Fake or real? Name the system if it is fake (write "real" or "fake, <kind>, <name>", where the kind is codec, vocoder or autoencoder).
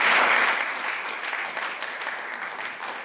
real